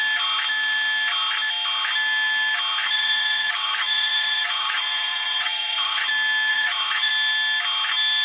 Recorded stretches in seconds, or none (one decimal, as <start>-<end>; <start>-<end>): 0.0-2.8; 6.1-6.5; 7.1-8.2